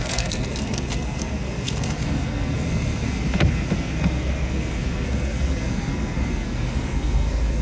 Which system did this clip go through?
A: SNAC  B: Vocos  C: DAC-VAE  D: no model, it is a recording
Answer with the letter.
A